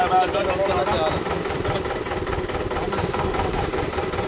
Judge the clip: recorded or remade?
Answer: recorded